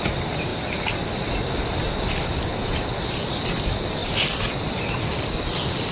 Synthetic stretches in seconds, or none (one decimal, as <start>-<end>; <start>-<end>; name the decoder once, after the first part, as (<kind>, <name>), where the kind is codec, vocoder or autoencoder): none